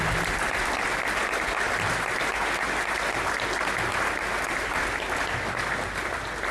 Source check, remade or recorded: recorded